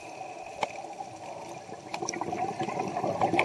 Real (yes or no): yes